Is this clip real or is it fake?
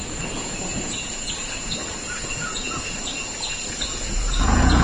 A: fake